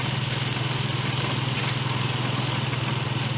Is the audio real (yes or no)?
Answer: yes